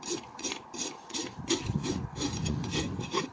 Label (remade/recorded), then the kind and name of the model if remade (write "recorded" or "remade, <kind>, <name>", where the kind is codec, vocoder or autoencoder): remade, vocoder, Vocos